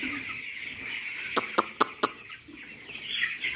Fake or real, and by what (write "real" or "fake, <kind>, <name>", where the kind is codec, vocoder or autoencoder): real